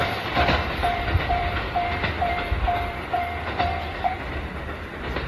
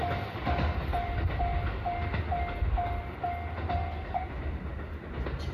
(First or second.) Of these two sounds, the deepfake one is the first